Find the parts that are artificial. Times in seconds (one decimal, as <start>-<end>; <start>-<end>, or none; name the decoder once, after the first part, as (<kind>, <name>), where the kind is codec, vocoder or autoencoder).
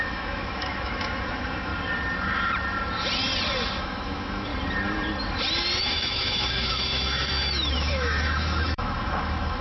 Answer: 0.0-1.7 (autoencoder, DAC-VAE); 3.8-4.5; 5.8-9.6